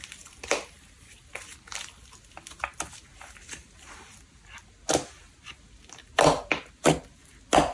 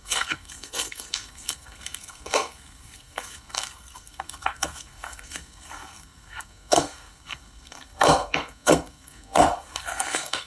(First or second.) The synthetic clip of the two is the second